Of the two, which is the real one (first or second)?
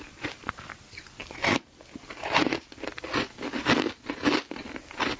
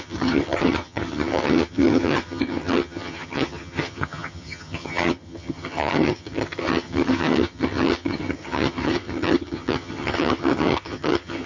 first